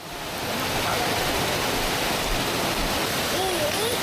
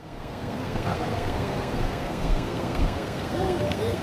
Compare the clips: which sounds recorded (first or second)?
first